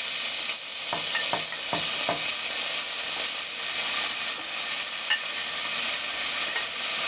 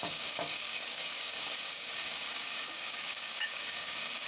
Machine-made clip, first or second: second